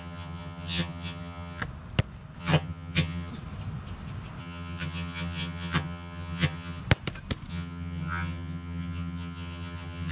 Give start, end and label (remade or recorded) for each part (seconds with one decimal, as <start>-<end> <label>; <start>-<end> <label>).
0.0-1.6 remade; 1.6-2.4 recorded; 2.4-3.3 remade; 3.3-4.4 recorded; 4.4-6.8 remade; 6.8-7.5 recorded; 7.5-10.1 remade